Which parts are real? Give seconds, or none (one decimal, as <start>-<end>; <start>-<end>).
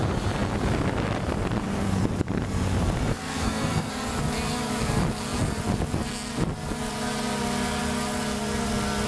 0.0-3.1; 3.9-9.1